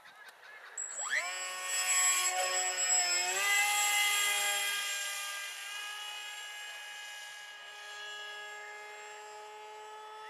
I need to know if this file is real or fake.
real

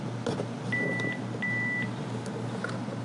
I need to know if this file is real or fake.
real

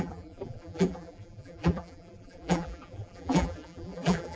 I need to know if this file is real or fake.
fake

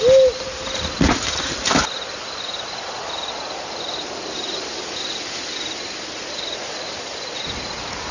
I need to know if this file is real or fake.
real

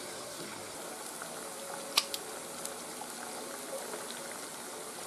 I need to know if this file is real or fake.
real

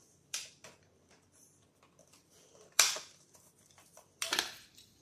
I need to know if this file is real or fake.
fake